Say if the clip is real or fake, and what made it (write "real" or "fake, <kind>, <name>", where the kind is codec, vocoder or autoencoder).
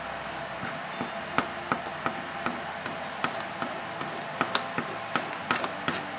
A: real